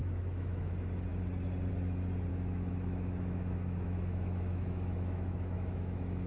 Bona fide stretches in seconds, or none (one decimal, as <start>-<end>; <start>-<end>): 0.7-2.3